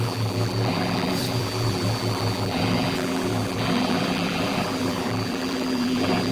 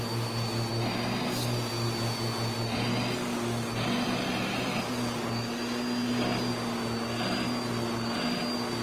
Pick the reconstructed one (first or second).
first